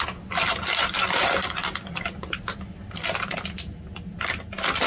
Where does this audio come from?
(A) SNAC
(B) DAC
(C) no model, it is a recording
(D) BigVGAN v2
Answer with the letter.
C